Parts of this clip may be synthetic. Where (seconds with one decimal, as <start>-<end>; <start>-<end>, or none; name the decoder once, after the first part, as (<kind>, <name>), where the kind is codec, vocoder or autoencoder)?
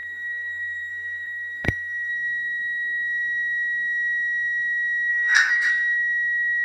0.0-2.1 (codec, SNAC); 5.1-5.7